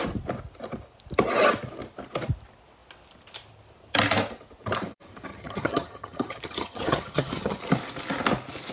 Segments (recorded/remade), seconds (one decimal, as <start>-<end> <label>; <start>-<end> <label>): 0.0-5.3 recorded; 5.3-7.6 remade; 7.6-8.7 recorded